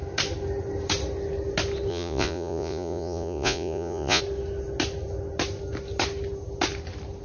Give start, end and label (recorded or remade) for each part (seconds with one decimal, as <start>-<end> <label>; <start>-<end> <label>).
0.0-1.9 recorded; 1.9-4.2 remade; 4.2-7.2 recorded